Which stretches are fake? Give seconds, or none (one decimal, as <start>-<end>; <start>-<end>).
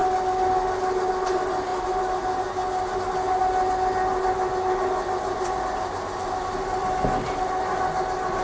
none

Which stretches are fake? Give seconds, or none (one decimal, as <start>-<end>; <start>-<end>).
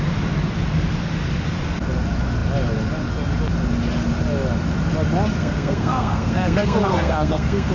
5.4-7.7